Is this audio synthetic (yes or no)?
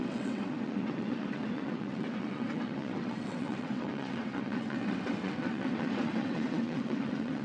yes